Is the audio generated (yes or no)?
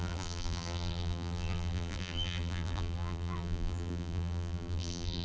yes